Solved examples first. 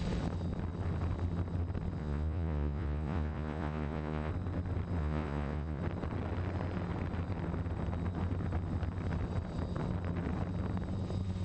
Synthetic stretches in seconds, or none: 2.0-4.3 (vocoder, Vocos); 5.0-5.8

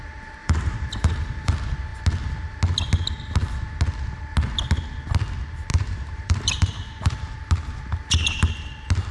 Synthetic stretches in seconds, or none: 0.4-1.5 (vocoder, BigVGAN v2); 5.7-7.4